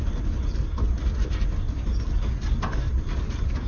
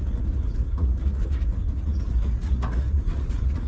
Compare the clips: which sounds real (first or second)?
first